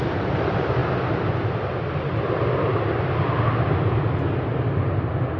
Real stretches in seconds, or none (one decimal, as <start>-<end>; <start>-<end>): 0.0-5.4